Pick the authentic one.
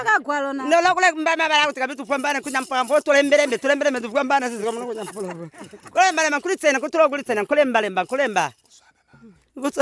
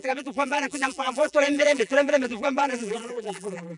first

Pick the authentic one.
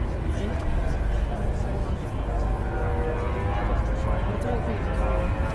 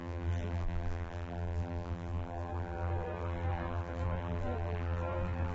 first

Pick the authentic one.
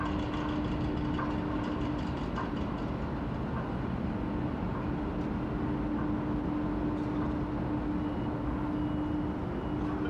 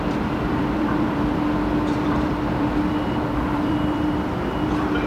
first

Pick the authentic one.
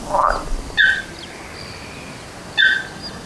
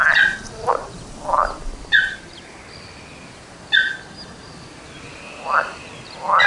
first